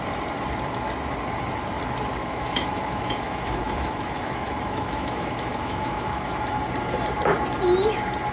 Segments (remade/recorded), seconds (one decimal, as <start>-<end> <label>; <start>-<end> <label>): 0.0-2.2 recorded; 2.2-6.6 remade; 6.6-8.3 recorded